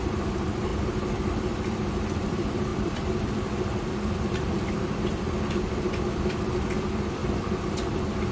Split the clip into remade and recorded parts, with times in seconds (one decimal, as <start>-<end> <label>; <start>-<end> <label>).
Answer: 0.0-0.7 remade; 0.7-1.3 recorded; 1.3-7.2 remade; 7.2-7.7 recorded; 7.7-8.3 remade